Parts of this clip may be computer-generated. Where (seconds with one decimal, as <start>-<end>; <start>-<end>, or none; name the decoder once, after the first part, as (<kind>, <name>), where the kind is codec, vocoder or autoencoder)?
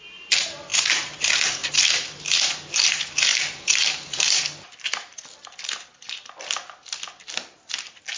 0.7-1.2 (vocoder, BigVGAN v2); 1.6-2.5; 3.3-7.7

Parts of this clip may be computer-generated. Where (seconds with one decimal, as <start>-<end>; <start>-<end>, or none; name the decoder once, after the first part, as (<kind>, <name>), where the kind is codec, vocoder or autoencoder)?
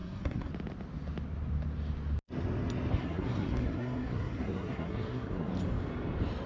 0.0-0.5 (codec, SNAC); 2.9-5.5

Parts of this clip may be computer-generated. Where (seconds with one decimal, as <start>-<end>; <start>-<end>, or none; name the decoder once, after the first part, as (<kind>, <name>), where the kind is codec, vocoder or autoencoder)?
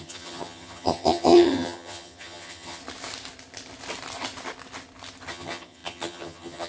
0.0-2.8 (vocoder, HiFi-GAN); 5.3-6.7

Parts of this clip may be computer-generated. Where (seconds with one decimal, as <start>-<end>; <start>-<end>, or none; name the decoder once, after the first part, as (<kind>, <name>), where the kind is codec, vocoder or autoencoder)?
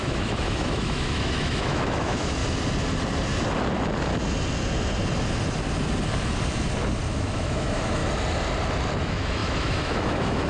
0.0-2.4 (autoencoder, DAC-VAE); 7.1-8.0; 9.0-10.5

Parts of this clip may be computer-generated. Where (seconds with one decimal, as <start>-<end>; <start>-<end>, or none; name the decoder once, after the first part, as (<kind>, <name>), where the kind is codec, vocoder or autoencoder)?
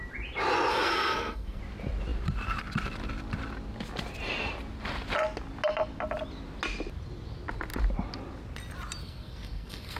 0.7-1.6 (codec, SNAC); 9.0-10.0